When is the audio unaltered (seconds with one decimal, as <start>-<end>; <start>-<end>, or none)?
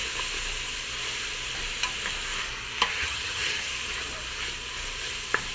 0.0-2.9; 3.7-5.5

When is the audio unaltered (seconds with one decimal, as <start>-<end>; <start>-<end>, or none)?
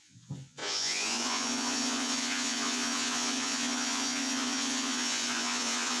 none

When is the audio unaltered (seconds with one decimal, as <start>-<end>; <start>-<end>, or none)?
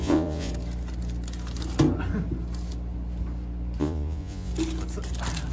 0.5-3.8; 4.5-5.5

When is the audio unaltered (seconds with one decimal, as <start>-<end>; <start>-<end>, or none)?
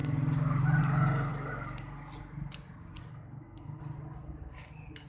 0.0-3.1; 3.8-5.1